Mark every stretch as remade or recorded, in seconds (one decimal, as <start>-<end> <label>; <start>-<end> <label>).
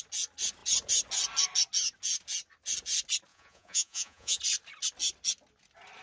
0.0-3.3 recorded; 3.3-4.4 remade; 4.4-6.0 recorded